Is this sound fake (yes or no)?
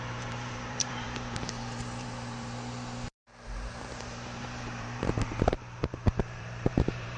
yes